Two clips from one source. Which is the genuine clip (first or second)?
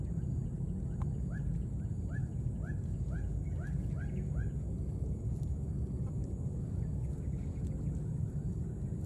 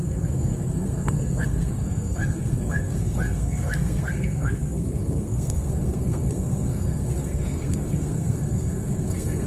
first